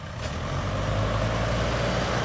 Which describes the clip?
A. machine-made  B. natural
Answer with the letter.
B